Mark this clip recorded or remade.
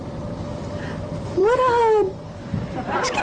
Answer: recorded